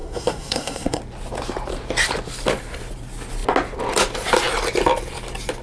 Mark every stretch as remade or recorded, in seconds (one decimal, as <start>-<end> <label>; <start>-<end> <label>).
0.0-1.0 remade; 1.0-5.6 recorded